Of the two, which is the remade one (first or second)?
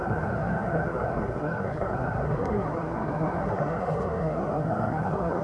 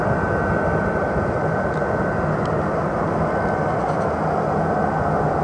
first